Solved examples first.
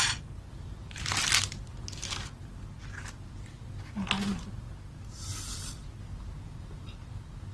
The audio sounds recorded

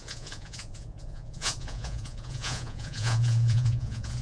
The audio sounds remade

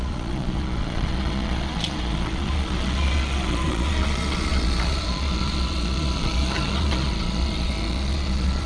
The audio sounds remade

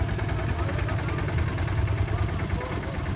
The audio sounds recorded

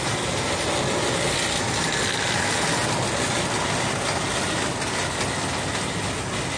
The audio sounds recorded